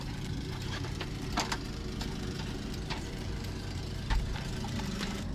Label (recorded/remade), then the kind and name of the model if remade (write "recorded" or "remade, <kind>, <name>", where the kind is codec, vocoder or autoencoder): remade, vocoder, BigVGAN v2